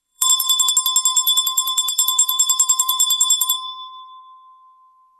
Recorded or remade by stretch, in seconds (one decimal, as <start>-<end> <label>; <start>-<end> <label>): 0.0-0.7 remade; 0.7-1.1 recorded; 1.1-4.2 remade; 4.2-5.2 recorded